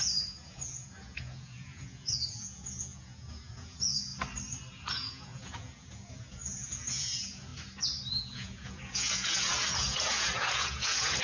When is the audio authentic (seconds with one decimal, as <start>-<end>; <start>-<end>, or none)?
4.1-4.7; 7.5-8.1

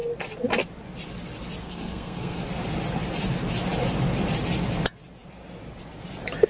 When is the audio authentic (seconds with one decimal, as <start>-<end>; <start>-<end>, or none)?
0.0-1.6; 2.4-6.5